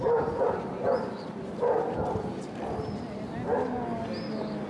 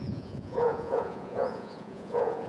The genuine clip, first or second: first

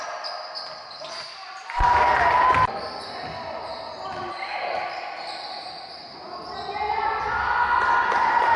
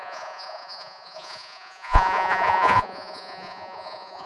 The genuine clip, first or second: first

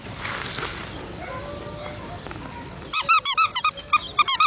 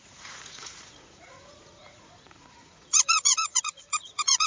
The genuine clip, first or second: first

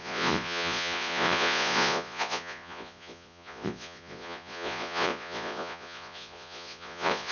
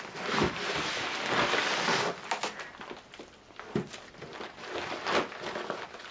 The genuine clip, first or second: second